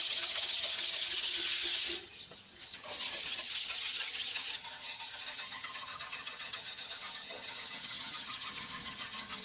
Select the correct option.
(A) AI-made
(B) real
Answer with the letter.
A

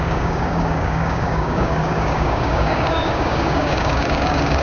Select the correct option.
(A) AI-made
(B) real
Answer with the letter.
A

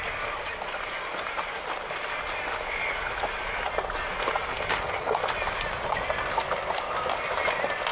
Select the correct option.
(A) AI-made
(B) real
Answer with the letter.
B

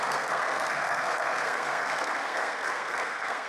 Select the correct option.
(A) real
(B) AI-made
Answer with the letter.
B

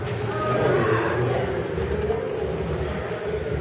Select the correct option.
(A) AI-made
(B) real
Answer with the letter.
B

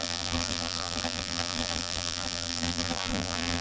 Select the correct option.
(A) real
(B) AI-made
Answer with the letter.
B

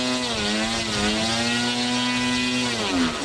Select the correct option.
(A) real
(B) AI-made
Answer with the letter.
A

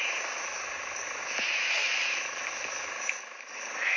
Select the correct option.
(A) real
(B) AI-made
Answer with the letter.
B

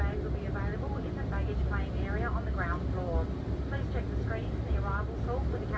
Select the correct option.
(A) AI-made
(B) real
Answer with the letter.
B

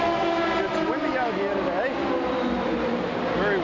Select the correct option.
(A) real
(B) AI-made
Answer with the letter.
A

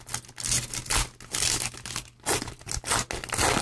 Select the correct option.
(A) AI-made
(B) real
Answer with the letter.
B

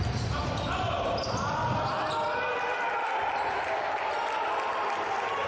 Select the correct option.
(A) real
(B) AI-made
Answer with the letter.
A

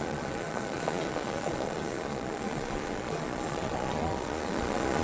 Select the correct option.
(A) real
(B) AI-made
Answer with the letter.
B